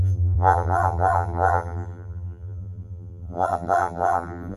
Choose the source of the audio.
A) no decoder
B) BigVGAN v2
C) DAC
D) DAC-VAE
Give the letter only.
B